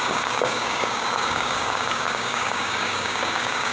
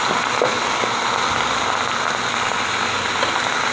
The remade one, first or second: first